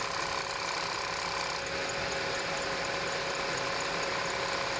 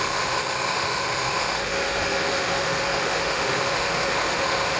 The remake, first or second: second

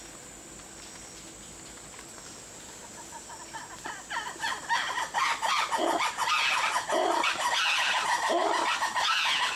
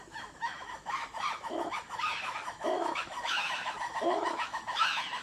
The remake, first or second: second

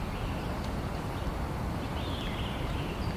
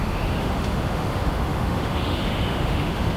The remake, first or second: second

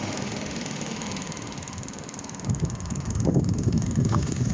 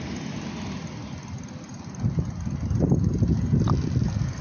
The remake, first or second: first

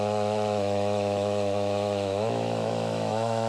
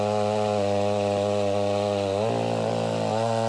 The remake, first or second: first